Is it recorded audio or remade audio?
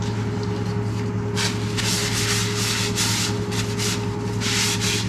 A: recorded